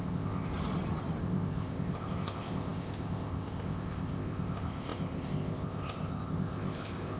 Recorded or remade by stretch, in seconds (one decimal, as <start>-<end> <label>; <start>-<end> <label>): 0.0-0.5 remade; 0.5-1.2 recorded; 1.2-7.2 remade